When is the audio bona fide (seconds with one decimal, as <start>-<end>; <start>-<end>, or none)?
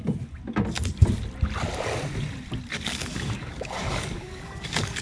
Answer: 0.0-2.7